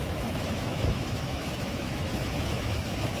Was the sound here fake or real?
fake